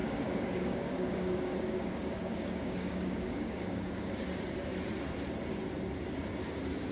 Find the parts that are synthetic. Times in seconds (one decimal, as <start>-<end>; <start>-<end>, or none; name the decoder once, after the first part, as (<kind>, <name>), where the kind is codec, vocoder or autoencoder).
0.0-4.1 (codec, DAC)